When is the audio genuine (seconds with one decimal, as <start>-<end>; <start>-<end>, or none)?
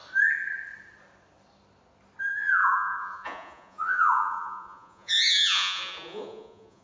0.0-2.2